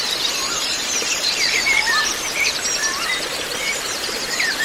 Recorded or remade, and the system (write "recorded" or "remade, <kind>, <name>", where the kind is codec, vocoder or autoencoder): remade, vocoder, BigVGAN v2